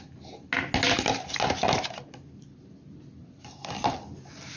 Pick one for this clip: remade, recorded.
recorded